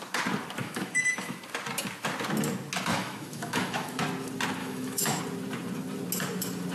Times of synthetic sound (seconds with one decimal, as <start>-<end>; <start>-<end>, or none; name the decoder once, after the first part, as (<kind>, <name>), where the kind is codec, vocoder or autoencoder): 0.6-1.4 (autoencoder, DAC-VAE); 2.9-4.0; 4.6-5.2